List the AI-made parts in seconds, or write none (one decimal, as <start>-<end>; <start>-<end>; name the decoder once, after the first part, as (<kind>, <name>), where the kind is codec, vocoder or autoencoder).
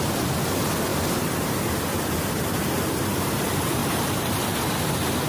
0.9-2.9 (vocoder, BigVGAN v2); 3.8-4.7